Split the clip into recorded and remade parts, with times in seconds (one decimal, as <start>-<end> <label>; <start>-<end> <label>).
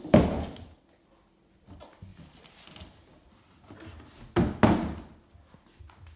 0.0-6.2 recorded